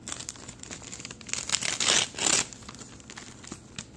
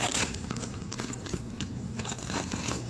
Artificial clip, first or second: second